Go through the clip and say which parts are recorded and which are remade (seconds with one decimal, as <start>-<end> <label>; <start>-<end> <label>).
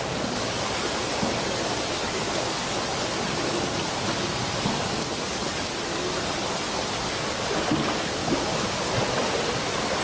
0.0-8.2 recorded; 8.2-10.0 remade